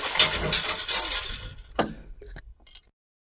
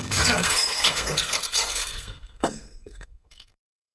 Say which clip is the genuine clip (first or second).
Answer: first